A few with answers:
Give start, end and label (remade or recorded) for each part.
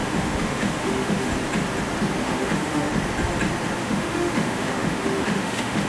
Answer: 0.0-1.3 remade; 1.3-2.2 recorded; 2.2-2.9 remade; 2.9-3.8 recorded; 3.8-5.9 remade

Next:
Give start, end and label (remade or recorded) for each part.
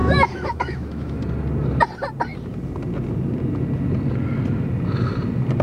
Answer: 0.0-1.2 remade; 1.2-5.6 recorded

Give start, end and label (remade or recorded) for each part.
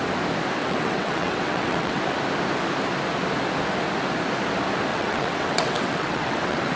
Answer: 0.0-0.6 recorded; 0.6-2.0 remade; 2.0-4.9 recorded; 4.9-6.8 remade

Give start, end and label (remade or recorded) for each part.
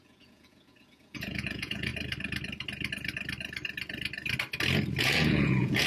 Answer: 0.0-1.9 remade; 1.9-5.0 recorded; 5.0-5.9 remade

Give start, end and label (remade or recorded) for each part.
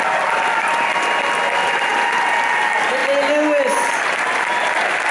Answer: 0.0-5.1 recorded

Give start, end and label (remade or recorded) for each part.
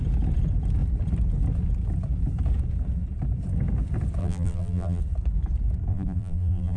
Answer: 0.0-4.2 recorded; 4.2-5.0 remade; 5.0-5.9 recorded; 5.9-6.8 remade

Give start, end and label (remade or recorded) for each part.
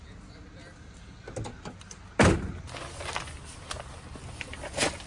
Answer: 0.0-5.1 recorded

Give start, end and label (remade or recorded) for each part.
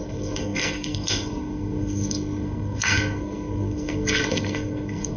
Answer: 0.0-5.2 remade